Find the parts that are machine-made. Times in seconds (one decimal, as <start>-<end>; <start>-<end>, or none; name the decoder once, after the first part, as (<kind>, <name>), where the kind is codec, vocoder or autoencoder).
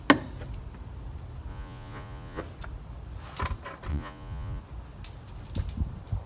1.5-2.4 (vocoder, Vocos); 3.9-4.6